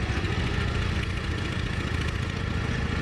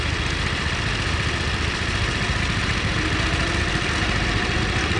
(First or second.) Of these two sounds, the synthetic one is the first